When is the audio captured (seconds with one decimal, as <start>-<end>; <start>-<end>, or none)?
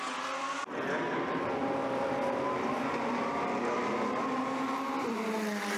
0.0-1.8; 2.7-5.8